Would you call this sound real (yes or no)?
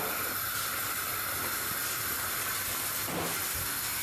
yes